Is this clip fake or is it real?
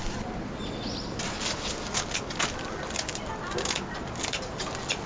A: real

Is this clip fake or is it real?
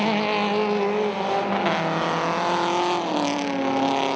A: real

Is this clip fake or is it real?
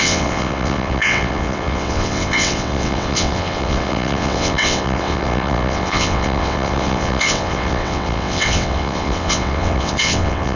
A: fake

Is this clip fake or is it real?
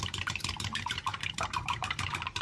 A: fake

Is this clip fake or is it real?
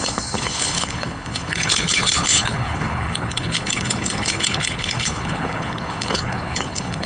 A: fake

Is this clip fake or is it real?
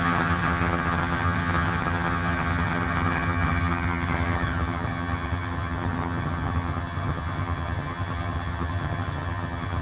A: fake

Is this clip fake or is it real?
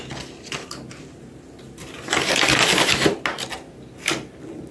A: real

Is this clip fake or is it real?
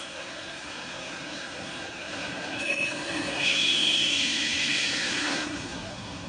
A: fake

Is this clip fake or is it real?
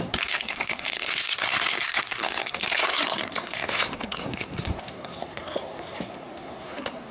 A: fake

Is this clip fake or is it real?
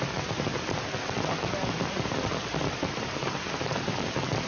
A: real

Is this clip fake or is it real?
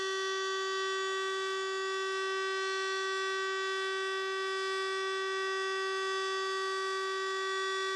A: real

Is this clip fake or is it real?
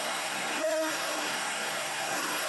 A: fake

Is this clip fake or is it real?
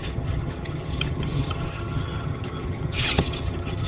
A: fake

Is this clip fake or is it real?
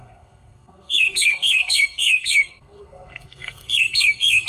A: fake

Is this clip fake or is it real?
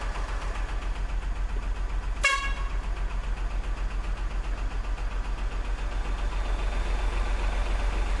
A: real